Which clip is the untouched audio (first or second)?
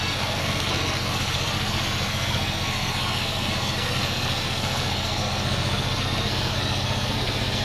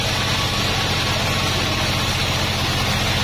second